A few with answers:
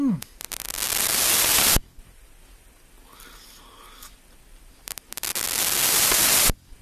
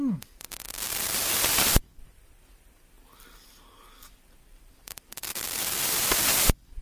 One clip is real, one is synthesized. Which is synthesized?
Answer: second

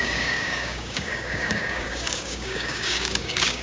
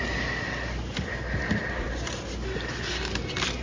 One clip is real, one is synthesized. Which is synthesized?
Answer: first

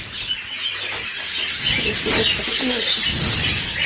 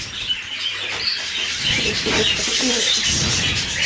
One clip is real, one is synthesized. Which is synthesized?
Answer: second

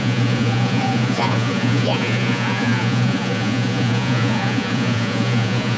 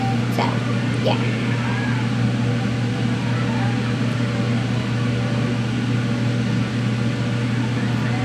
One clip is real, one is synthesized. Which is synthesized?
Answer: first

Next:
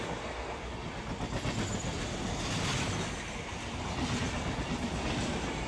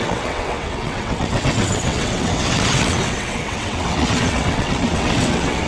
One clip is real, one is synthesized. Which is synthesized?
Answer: second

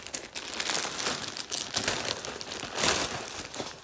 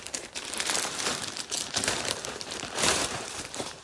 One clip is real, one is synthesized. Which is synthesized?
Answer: second